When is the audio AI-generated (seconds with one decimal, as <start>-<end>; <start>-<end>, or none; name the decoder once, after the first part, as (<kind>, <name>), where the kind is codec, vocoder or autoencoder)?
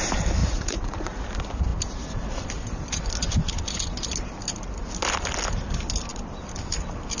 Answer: 0.4-1.2 (vocoder, Vocos)